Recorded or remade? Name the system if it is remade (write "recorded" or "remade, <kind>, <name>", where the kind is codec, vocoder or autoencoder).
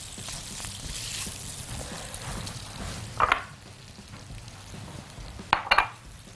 recorded